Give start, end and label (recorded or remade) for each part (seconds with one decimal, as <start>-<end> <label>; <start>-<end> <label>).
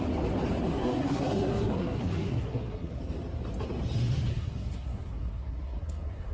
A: 0.0-0.7 recorded; 0.7-3.0 remade; 3.0-4.3 recorded; 4.3-6.3 remade